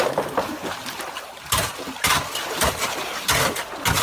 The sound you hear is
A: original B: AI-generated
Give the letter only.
A